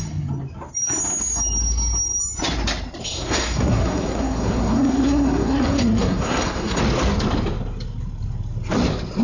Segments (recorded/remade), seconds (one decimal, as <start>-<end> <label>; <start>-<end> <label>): 0.0-3.0 recorded; 3.0-6.8 remade; 6.8-9.2 recorded